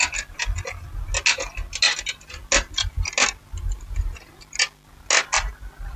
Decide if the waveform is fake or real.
real